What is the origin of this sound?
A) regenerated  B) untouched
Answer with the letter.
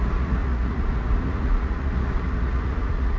A